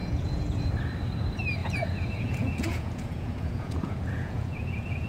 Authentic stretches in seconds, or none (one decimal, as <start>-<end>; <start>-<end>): 0.7-1.6